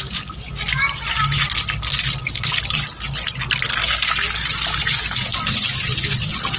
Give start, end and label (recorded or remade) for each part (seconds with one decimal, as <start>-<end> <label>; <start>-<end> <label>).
0.0-6.6 recorded